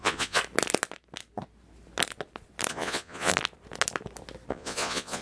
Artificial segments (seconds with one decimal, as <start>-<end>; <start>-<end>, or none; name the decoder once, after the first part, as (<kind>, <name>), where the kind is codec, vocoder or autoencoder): 0.0-0.4 (vocoder, Vocos); 2.7-3.3; 4.5-5.2